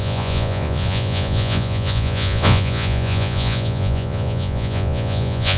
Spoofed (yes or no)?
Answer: yes